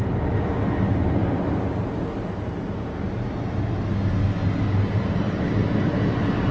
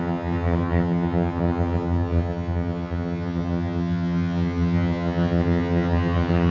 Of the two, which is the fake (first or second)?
second